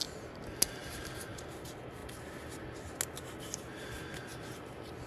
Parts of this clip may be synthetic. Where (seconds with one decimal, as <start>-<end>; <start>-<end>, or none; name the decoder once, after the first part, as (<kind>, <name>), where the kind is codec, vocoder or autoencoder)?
none